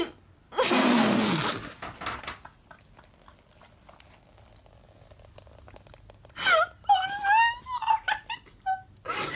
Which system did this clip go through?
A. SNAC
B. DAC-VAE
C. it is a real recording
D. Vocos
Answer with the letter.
C